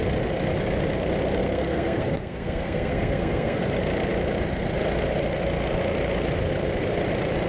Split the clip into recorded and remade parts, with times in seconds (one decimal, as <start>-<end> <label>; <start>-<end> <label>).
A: 0.0-1.4 recorded; 1.4-3.6 remade; 3.6-7.5 recorded